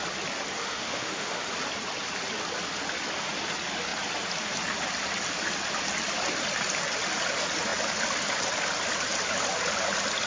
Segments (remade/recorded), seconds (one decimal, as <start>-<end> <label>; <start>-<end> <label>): 0.0-0.6 recorded; 0.6-1.4 remade; 1.4-10.3 recorded